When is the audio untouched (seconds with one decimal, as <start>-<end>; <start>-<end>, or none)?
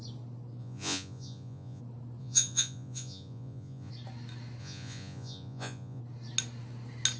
0.0-0.6; 1.8-2.2; 3.9-4.6; 6.0-7.2